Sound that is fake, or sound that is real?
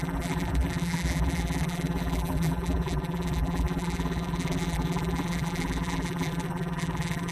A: fake